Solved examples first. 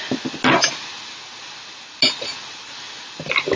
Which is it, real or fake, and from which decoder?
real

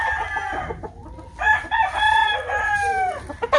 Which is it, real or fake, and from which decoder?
real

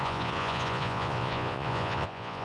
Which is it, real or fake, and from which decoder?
fake, vocoder, Vocos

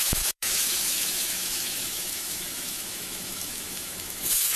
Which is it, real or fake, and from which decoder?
fake, autoencoder, DAC-VAE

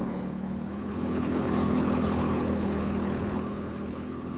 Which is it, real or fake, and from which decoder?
fake, codec, HILCodec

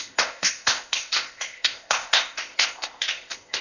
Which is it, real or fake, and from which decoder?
fake, codec, ZipCodec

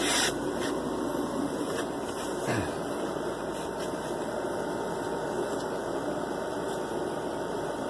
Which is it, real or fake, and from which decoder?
fake, vocoder, BigVGAN v2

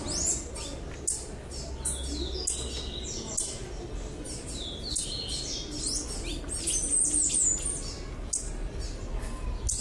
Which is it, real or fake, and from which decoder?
real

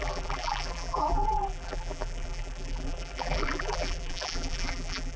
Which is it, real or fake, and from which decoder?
fake, vocoder, BigVGAN v2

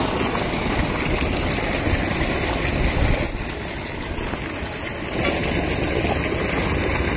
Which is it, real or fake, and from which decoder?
real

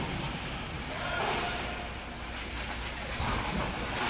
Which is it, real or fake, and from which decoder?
real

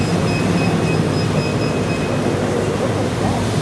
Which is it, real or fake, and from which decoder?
real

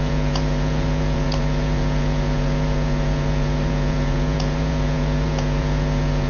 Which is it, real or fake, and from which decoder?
fake, vocoder, Vocos